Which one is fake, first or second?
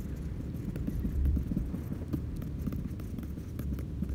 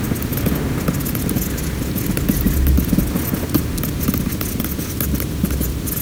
first